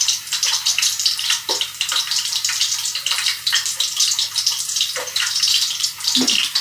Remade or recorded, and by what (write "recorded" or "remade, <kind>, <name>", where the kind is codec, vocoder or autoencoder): remade, vocoder, BigVGAN v2